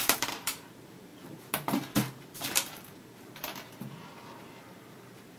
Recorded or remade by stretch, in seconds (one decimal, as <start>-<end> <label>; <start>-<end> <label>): 0.0-5.4 remade